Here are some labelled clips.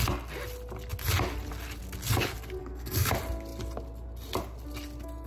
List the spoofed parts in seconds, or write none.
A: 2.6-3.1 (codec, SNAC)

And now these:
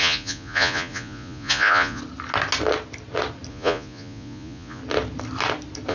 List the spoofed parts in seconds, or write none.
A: 0.0-2.0 (vocoder, Vocos); 3.5-4.8

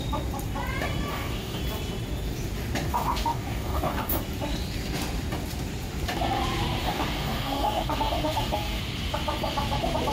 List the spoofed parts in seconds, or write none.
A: 1.1-1.6 (codec, DAC); 2.9-4.2; 6.8-8.8

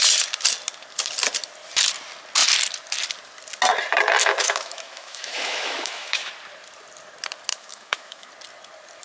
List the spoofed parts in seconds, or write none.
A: 4.2-6.3 (autoencoder, DAC-VAE); 7.5-8.3

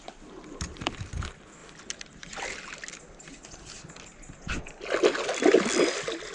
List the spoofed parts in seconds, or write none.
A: none

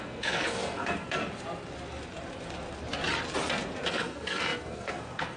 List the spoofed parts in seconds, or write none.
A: 0.0-1.2 (codec, SNAC); 3.9-5.4

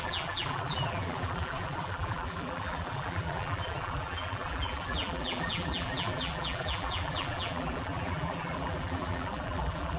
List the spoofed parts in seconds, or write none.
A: 0.0-10.0 (vocoder, BigVGAN v2)

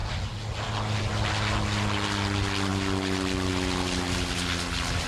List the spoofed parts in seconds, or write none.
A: none